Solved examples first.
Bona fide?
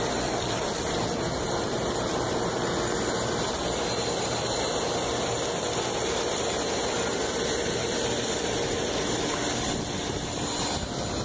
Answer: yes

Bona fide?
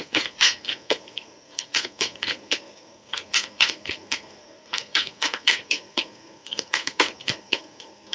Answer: no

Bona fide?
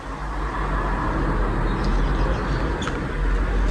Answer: yes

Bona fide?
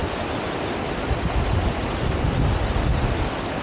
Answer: yes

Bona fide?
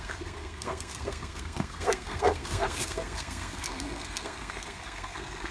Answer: no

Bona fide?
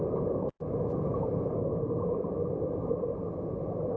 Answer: yes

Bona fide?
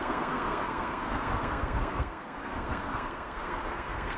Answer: no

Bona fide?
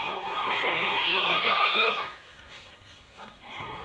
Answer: no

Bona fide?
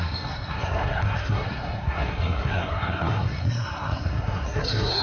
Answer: no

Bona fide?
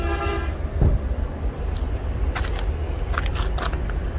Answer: yes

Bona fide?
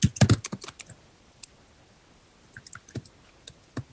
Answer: yes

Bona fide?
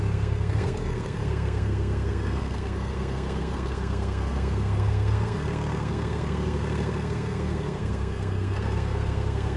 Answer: no